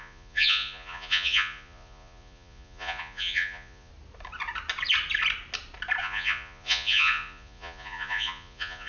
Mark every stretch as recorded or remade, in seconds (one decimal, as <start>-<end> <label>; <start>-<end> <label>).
0.0-3.9 remade; 3.9-6.0 recorded; 6.0-8.9 remade